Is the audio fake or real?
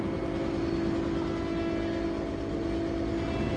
real